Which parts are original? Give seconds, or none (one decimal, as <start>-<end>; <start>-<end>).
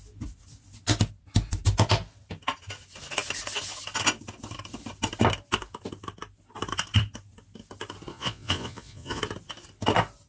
0.0-8.1; 9.2-10.3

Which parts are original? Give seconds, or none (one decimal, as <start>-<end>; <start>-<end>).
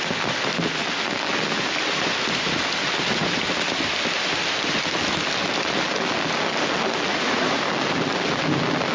0.0-7.1; 7.6-8.9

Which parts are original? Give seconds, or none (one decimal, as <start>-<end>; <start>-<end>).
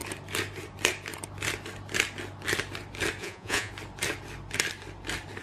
0.0-3.2; 3.7-5.4